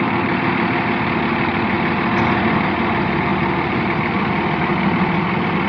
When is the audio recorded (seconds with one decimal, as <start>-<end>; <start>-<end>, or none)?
0.0-5.7

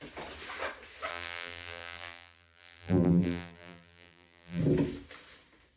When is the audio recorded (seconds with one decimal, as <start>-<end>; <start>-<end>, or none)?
0.0-1.1; 4.6-5.8